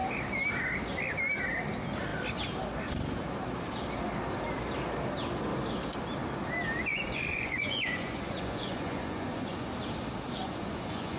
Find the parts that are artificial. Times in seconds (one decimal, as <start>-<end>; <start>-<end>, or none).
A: 6.9-9.7; 10.4-11.2

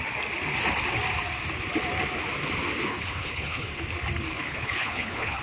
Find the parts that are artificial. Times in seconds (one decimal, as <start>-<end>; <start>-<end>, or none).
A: 2.9-3.8; 4.3-5.4

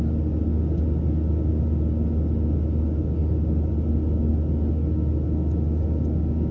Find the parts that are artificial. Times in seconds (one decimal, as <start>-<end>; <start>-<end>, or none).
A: none

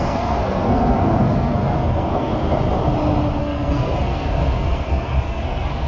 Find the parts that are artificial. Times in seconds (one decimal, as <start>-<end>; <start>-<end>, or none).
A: 0.0-2.3; 3.4-5.9

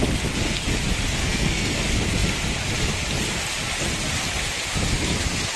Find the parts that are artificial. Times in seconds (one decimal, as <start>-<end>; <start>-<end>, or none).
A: 1.2-1.8

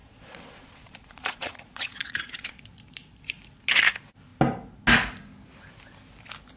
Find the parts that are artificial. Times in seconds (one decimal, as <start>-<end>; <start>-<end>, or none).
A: 0.0-2.6